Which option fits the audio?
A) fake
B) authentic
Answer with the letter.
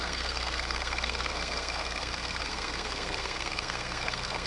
A